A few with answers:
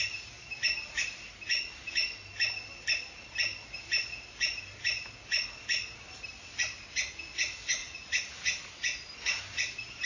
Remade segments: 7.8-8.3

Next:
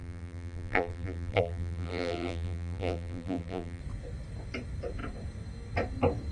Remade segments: 0.0-3.8

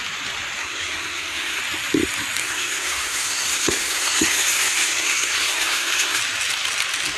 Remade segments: 0.6-1.6; 2.4-6.2

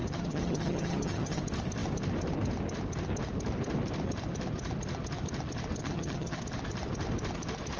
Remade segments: 0.0-1.4; 5.8-6.4